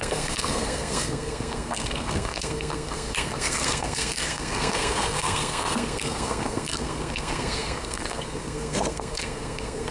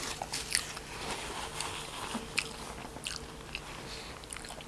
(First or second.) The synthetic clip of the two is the first